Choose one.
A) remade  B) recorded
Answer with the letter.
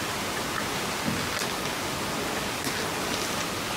B